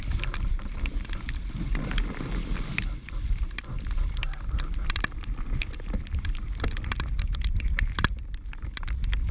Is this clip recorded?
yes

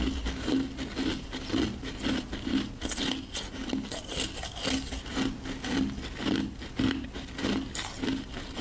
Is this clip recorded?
yes